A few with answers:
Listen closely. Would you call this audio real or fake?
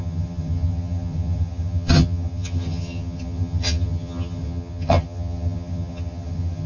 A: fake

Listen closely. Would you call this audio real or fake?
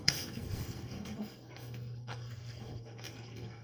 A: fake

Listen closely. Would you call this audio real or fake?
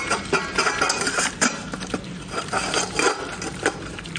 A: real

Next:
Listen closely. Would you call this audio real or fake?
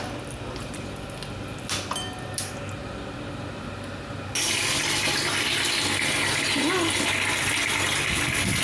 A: real